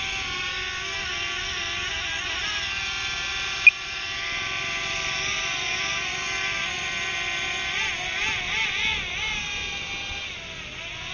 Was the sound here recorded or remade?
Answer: recorded